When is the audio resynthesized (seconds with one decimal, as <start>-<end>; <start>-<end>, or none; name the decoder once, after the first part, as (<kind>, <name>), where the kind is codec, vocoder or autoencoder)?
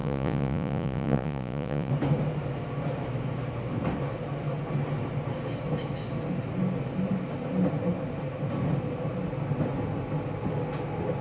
0.0-1.9 (vocoder, Vocos)